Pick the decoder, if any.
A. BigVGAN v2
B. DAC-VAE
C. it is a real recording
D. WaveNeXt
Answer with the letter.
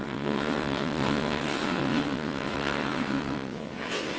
D